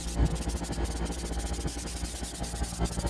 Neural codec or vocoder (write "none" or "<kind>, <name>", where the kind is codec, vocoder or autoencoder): none